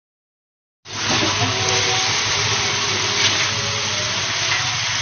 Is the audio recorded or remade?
recorded